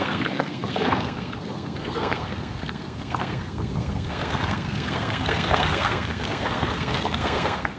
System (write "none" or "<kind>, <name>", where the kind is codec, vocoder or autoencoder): codec, SNAC